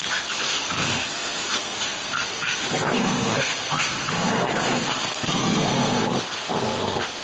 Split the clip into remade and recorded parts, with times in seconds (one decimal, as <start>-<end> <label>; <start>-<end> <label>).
0.0-7.2 remade